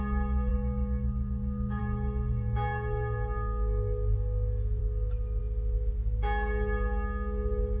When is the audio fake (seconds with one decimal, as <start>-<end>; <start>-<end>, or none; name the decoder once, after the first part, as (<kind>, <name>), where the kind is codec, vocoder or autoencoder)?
0.5-1.8 (autoencoder, DAC-VAE); 4.8-5.4